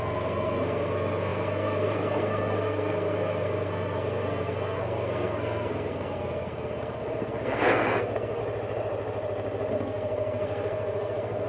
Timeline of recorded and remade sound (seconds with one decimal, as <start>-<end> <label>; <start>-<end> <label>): 0.0-8.4 remade; 8.4-9.7 recorded; 9.7-11.5 remade